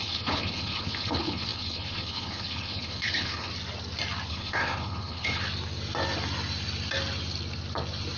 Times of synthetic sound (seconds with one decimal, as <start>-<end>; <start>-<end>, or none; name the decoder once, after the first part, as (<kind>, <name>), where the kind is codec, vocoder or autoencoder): 0.0-3.5 (codec, HILCodec); 4.3-5.4

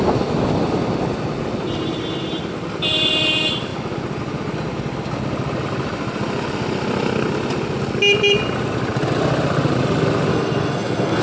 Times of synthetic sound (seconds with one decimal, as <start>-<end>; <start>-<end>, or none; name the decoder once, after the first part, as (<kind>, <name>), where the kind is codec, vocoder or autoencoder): 10.3-11.2 (codec, SNAC)

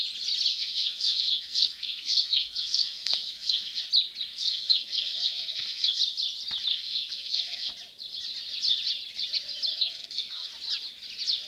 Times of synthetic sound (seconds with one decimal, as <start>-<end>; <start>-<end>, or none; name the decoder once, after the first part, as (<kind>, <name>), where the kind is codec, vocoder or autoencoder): 0.5-3.8 (codec, SNAC); 4.3-6.0; 6.7-7.7; 9.7-10.5

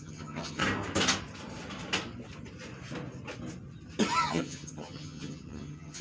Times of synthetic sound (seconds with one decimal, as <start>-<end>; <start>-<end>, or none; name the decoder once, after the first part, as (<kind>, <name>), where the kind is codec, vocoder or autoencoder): 0.0-0.6 (vocoder, HiFi-GAN); 4.2-6.0

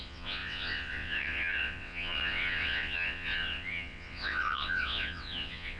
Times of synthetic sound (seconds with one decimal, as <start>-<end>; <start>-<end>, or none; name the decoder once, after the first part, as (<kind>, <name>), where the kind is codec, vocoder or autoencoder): 0.0-5.8 (vocoder, WaveNeXt)

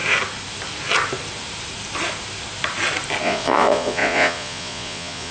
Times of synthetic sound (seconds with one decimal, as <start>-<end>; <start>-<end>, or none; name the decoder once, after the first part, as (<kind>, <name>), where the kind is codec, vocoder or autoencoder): 3.2-5.3 (vocoder, Vocos)